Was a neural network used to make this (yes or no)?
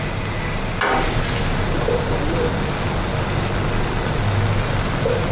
no